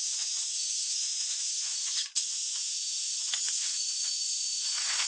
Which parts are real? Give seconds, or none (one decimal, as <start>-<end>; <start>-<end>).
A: none